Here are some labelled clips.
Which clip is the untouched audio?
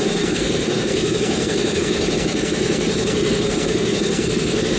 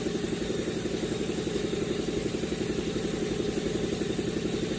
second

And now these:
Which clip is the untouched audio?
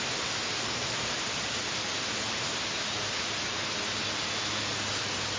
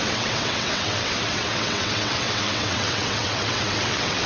first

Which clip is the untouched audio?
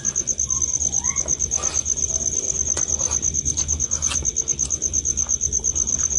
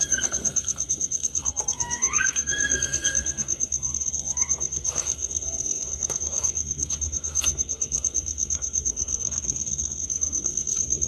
first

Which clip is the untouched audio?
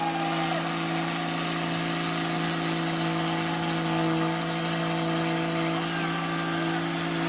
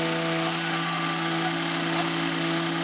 first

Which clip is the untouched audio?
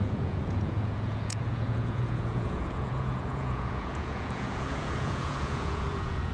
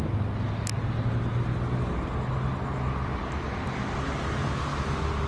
second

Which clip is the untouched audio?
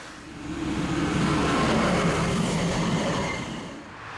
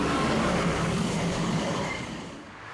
first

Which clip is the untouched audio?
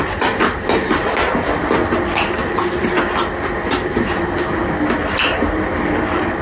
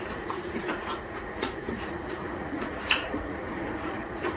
first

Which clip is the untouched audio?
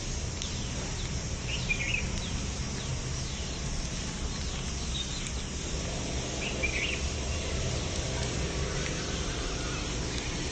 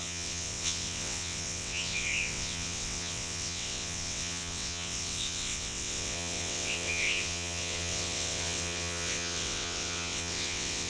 first